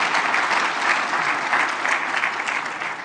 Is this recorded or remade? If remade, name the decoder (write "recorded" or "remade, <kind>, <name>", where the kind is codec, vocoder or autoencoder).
recorded